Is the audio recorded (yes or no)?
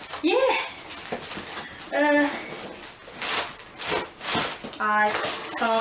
yes